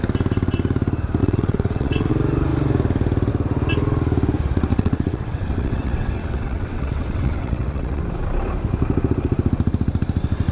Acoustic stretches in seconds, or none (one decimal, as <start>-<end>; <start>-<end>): 0.0-1.2; 2.1-4.7; 8.0-10.5